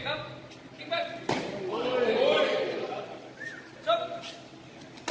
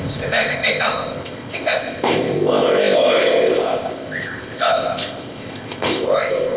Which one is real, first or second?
first